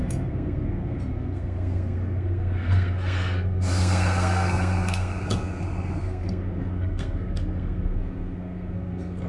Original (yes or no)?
no